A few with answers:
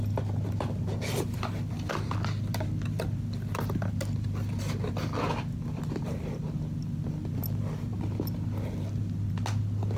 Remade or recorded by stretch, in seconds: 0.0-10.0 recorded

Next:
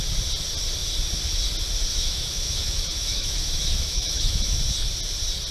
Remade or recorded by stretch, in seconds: 0.0-1.9 recorded; 1.9-4.6 remade; 4.6-5.5 recorded

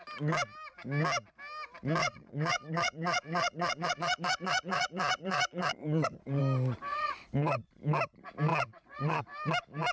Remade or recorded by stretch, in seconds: 0.0-2.0 recorded; 2.0-6.4 remade; 6.4-6.9 recorded; 6.9-7.8 remade; 7.8-8.5 recorded; 8.5-9.2 remade; 9.2-9.9 recorded

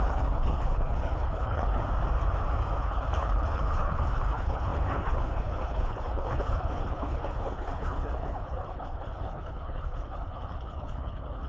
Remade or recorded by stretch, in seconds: 0.0-1.8 remade; 1.8-2.8 recorded; 2.8-11.5 remade